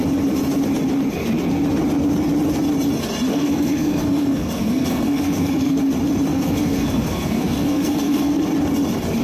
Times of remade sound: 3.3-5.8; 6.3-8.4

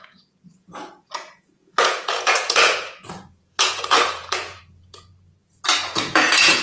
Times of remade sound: 0.0-5.1; 5.9-6.6

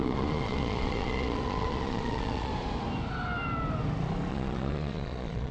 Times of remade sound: 0.0-2.5; 4.3-5.5

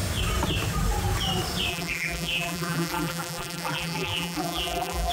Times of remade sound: 1.7-5.1

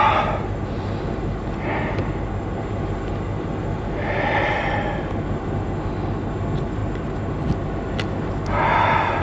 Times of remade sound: none

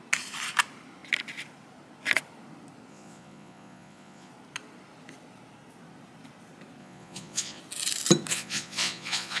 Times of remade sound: 2.9-4.3; 6.8-7.6; 8.3-9.4

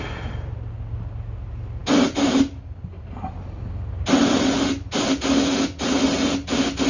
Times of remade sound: none

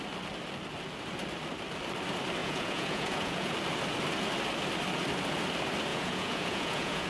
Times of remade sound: 2.4-3.5; 5.9-7.1